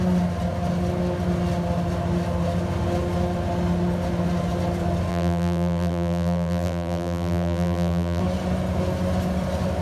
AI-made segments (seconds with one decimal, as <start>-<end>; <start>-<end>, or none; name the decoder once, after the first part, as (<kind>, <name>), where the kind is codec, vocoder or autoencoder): 5.1-8.2 (vocoder, BigVGAN v2)